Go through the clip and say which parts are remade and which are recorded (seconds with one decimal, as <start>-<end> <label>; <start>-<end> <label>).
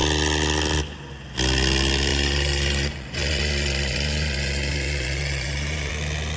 0.0-2.1 recorded; 2.1-5.9 remade; 5.9-6.4 recorded